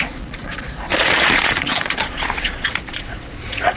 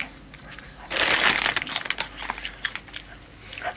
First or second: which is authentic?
second